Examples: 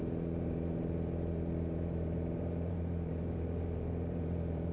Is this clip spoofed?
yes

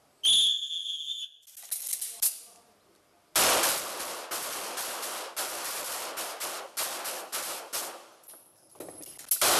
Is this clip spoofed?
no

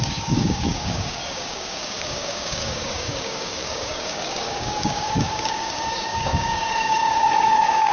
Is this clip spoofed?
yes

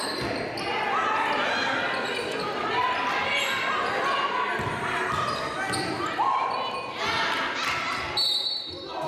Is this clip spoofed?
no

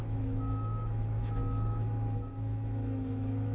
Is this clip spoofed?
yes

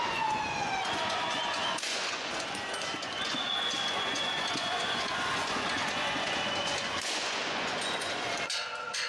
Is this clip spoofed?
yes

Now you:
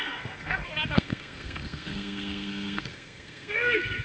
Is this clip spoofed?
yes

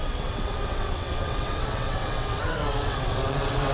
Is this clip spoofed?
yes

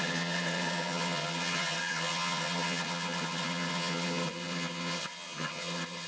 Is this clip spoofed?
yes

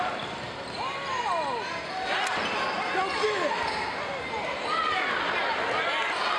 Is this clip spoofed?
no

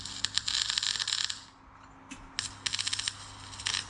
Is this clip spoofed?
no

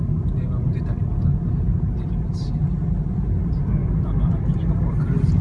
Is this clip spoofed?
no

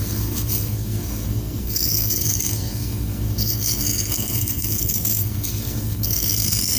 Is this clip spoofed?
yes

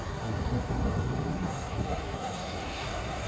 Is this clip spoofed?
yes